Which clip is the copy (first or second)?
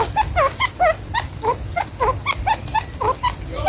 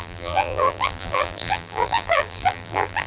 second